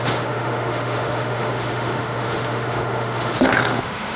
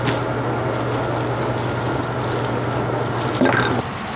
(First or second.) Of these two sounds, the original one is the second